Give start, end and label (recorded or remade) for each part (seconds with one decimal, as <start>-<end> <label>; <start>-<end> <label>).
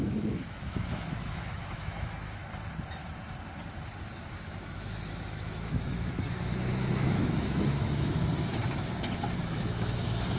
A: 0.0-2.4 remade; 2.4-4.3 recorded; 4.3-8.3 remade; 8.3-9.4 recorded; 9.4-10.4 remade